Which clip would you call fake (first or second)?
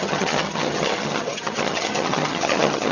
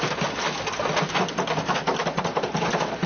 first